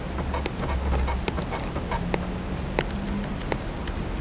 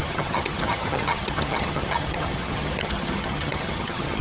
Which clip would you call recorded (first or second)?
first